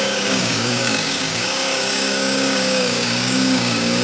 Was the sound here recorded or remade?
remade